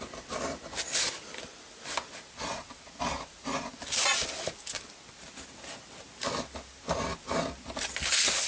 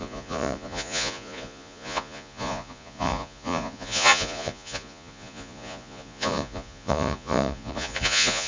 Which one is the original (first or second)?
first